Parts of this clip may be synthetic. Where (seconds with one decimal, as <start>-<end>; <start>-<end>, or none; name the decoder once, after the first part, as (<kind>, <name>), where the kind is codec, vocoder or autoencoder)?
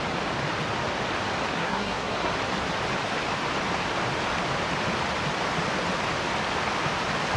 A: 1.6-2.3 (codec, SNAC)